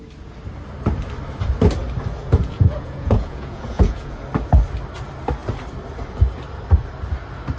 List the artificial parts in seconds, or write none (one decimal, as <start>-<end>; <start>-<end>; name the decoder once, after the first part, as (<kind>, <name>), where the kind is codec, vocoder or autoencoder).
2.2-4.2 (vocoder, Vocos)